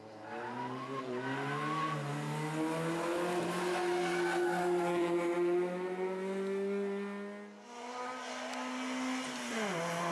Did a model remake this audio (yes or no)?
no